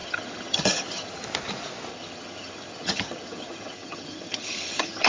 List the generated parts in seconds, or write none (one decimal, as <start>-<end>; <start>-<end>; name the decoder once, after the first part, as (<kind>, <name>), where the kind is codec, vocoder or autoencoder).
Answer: 0.0-1.2 (vocoder, HiFi-GAN); 1.9-5.1